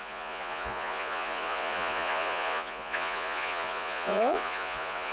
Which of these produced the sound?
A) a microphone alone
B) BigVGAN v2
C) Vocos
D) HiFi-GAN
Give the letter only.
C